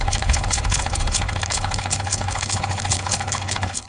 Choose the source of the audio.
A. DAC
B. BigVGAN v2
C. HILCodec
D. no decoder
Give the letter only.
C